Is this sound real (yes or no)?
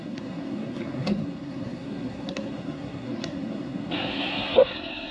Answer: no